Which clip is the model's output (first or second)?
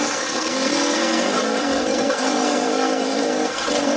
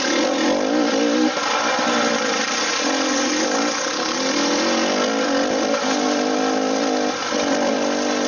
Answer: first